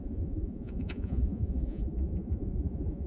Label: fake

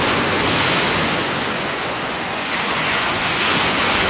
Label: fake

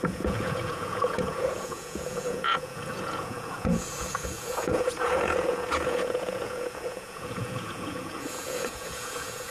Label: fake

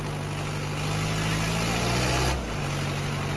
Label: real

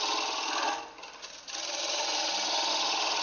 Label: real